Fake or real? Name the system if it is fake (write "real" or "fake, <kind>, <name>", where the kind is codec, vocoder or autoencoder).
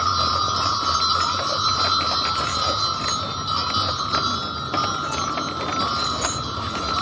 real